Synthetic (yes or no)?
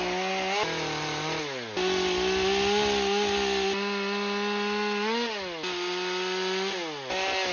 no